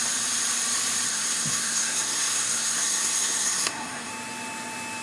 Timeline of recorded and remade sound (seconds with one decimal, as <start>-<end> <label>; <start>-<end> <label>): 0.0-1.1 recorded; 1.1-4.1 remade; 4.1-5.0 recorded